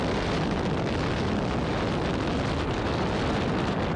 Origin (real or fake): real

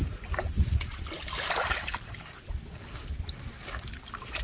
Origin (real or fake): real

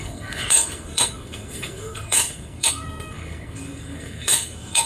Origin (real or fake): fake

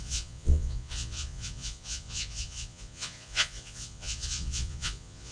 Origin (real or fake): fake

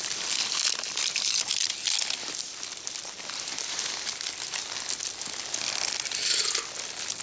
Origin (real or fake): real